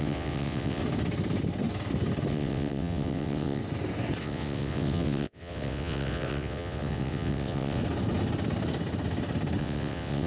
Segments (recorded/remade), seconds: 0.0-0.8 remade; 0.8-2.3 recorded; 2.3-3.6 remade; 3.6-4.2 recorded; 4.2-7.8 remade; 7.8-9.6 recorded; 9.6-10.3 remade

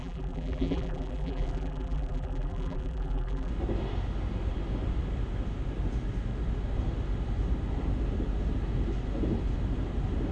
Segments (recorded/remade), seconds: 0.0-3.5 remade; 3.5-10.3 recorded

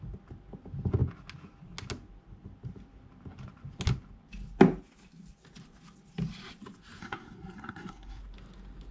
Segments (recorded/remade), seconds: 0.0-7.0 recorded; 7.0-8.2 remade; 8.2-8.9 recorded

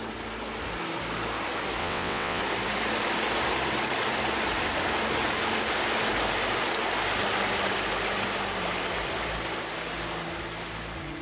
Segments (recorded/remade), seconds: 0.0-1.8 recorded; 1.8-2.4 remade; 2.4-11.2 recorded

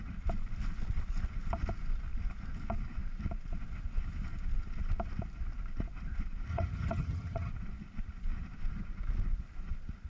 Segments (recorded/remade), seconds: 0.0-6.5 recorded; 6.5-7.5 remade; 7.5-10.1 recorded

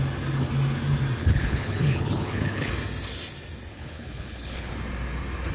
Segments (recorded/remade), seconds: 0.0-1.2 recorded; 1.2-2.7 remade; 2.7-3.7 recorded; 3.7-4.7 remade; 4.7-5.5 recorded

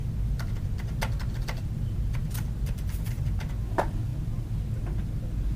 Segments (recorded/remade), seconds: 0.0-5.6 recorded